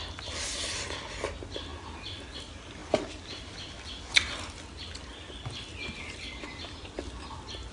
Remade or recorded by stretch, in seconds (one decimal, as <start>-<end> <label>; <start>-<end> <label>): 0.0-7.7 recorded